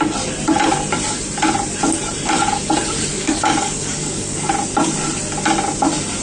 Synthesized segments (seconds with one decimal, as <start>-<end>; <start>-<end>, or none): 3.1-4.5